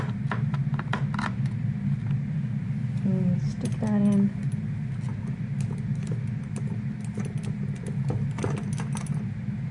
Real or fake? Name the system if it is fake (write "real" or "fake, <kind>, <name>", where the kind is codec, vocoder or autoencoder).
real